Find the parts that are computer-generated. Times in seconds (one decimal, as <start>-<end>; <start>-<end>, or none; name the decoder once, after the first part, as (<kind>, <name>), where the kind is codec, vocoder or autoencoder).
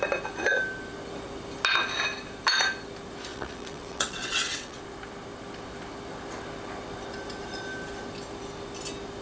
3.3-4.8 (vocoder, WaveNeXt)